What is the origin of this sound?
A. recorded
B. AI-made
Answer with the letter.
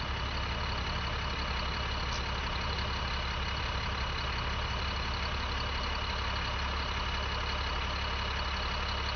A